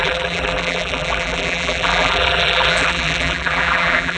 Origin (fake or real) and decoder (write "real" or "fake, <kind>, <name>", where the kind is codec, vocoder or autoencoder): fake, vocoder, BigVGAN v2